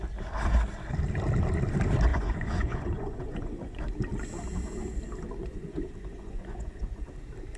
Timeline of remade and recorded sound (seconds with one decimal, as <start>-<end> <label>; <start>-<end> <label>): 0.0-2.1 recorded; 2.1-3.8 remade; 3.8-5.4 recorded; 5.4-7.0 remade; 7.0-7.6 recorded